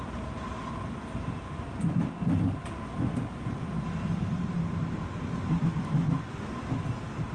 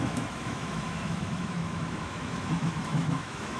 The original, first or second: first